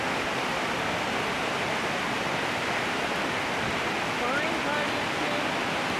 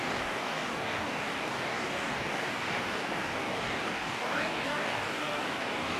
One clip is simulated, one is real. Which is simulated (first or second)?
second